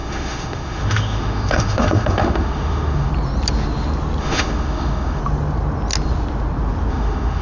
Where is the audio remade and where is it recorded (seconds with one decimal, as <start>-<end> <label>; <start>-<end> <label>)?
0.0-3.1 remade; 3.1-4.2 recorded; 4.2-5.2 remade; 5.2-6.9 recorded; 6.9-7.4 remade